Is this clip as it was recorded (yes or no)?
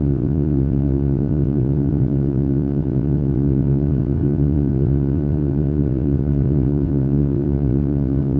no